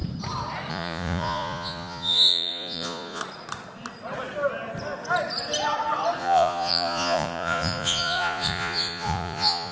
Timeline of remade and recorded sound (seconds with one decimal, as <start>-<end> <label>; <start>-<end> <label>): 0.0-0.7 recorded; 0.7-3.2 remade; 3.2-6.2 recorded; 6.2-9.7 remade